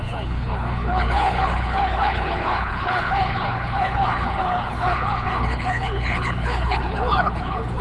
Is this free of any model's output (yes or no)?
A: no